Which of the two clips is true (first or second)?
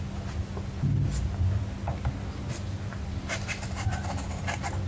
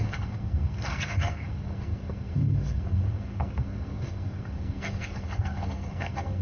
first